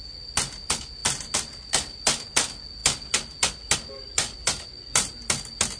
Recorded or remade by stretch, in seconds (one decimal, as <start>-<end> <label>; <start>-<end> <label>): 0.0-5.8 recorded